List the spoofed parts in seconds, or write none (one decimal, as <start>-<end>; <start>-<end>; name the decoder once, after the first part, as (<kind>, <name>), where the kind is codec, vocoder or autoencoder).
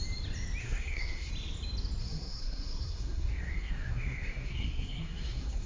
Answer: 0.6-1.3 (codec, SNAC); 2.0-5.7